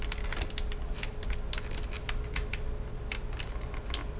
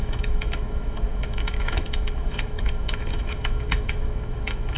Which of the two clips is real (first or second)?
first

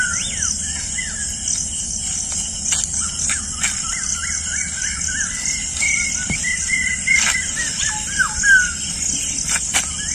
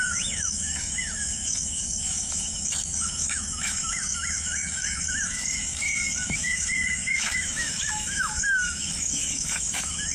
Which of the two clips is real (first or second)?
first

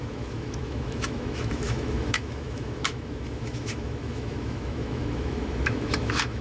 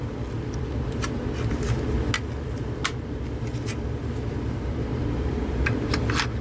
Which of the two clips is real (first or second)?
second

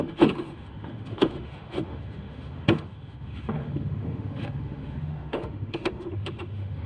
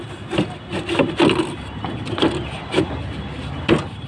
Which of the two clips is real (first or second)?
second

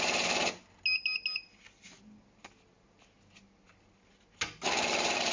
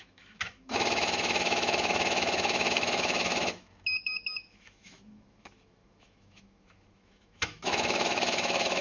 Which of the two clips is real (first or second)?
first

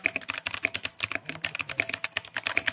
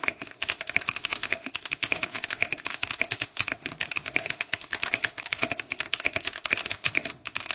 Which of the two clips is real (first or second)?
first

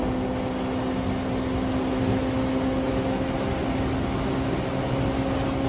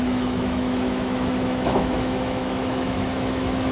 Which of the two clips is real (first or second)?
first